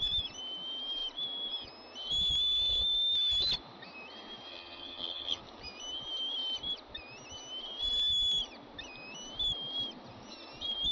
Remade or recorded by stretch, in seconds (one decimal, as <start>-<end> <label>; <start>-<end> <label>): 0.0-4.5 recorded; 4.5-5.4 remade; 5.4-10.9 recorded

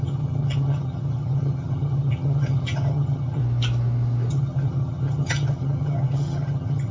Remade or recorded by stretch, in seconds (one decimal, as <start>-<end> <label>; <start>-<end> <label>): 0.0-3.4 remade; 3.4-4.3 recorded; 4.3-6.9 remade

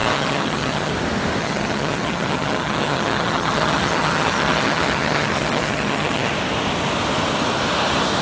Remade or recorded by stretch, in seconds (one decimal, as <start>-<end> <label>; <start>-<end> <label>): 0.0-0.9 remade; 0.9-1.4 recorded; 1.4-6.3 remade; 6.3-8.2 recorded

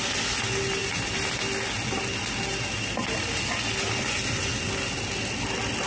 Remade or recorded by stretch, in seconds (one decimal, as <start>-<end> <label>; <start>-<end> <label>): 0.0-5.9 recorded

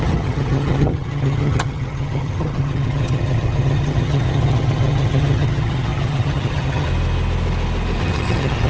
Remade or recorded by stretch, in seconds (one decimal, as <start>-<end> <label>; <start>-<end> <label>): 0.0-6.9 remade; 6.9-8.0 recorded; 8.0-8.7 remade

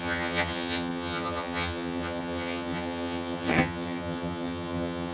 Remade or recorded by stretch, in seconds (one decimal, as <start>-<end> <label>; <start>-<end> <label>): 0.0-5.1 remade

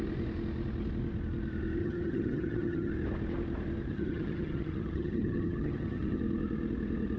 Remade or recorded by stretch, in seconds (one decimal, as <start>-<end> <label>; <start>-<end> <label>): 0.0-1.8 recorded; 1.8-2.9 remade; 2.9-3.9 recorded; 3.9-6.2 remade; 6.2-7.2 recorded